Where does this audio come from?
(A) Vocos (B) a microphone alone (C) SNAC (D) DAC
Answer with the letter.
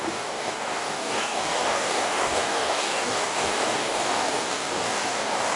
D